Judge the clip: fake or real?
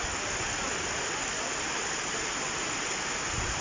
real